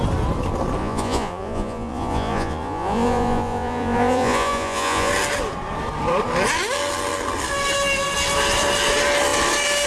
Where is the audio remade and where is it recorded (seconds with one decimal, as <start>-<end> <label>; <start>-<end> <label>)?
0.0-0.8 recorded; 0.8-5.1 remade; 5.1-9.9 recorded